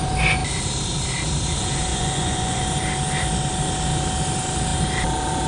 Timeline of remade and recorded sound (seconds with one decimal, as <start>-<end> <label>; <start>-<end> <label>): 0.0-1.9 recorded; 1.9-2.6 remade; 2.6-5.5 recorded